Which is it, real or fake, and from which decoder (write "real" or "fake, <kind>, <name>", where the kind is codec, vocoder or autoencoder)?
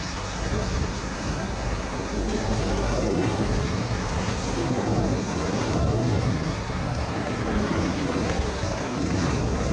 fake, codec, SNAC